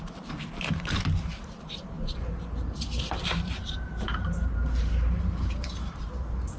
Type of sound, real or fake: fake